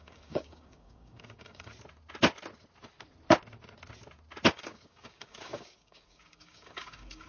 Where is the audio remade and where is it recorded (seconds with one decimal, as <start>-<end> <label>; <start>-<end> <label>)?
0.0-1.7 remade; 1.7-4.5 recorded; 4.5-7.3 remade